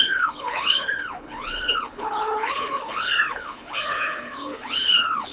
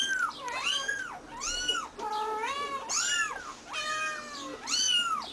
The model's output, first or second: first